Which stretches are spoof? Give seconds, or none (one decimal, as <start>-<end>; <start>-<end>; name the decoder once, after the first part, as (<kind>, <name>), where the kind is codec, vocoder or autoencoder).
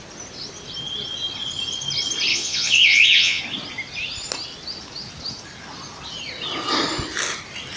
2.3-3.4 (vocoder, Vocos)